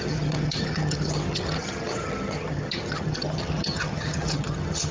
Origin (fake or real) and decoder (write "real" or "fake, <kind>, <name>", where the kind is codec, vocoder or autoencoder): fake, vocoder, HiFi-GAN